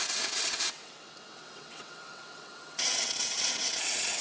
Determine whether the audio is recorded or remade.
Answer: remade